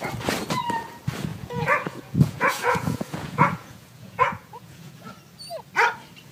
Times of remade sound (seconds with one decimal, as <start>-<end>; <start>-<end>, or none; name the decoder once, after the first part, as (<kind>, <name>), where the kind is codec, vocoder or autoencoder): 1.3-5.1 (vocoder, Vocos)